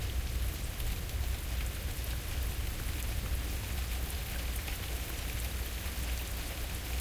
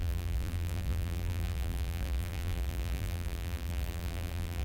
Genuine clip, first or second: first